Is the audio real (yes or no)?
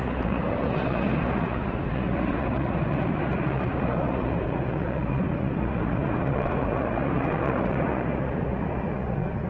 no